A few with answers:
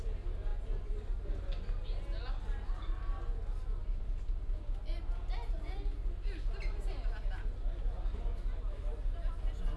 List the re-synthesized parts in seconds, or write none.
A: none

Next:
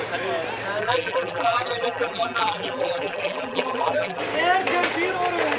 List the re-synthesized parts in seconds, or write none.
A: 0.8-4.2 (vocoder, BigVGAN v2)

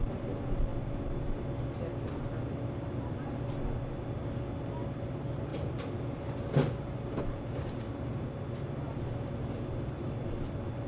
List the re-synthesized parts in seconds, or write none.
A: none

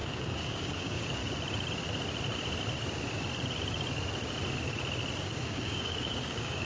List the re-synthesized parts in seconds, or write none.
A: 0.0-1.2 (codec, DAC); 5.2-6.6

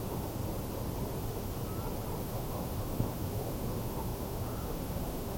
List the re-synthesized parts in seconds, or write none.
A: 0.0-0.4 (autoencoder, DAC-VAE); 1.2-1.6; 2.2-5.4

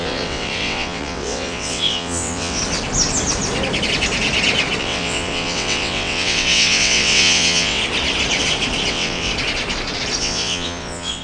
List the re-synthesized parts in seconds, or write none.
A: 0.0-2.6 (vocoder, WaveNeXt); 4.8-7.8; 8.9-9.3; 10.2-11.2